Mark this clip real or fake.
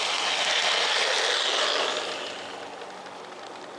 real